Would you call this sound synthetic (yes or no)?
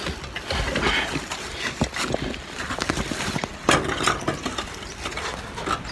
no